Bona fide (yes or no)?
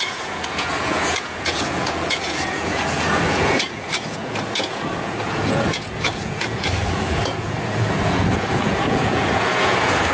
no